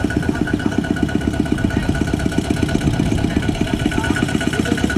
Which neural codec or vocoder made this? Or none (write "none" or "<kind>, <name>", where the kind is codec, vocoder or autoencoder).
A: vocoder, BigVGAN v2